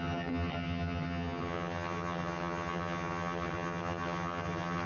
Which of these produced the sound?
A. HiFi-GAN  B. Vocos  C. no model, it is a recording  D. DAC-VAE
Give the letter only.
A